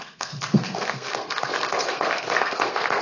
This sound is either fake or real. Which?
fake